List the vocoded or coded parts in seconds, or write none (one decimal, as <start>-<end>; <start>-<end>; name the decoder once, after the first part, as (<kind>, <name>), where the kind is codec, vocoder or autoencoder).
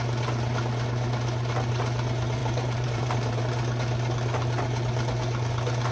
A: 2.4-3.4 (vocoder, BigVGAN v2)